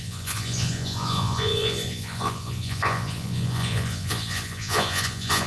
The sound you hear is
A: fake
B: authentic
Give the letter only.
A